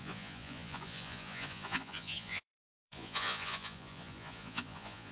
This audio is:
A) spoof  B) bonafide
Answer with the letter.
A